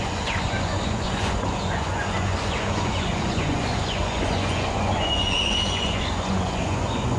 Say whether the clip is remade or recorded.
remade